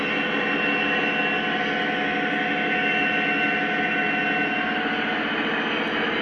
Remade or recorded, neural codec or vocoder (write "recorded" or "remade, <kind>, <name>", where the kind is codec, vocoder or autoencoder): recorded